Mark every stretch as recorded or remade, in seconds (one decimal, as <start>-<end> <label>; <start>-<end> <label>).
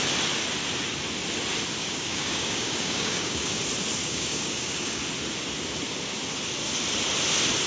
0.0-1.8 recorded; 1.8-3.6 remade; 3.6-4.0 recorded; 4.0-5.0 remade; 5.0-7.7 recorded